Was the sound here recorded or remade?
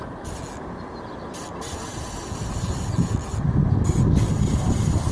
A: recorded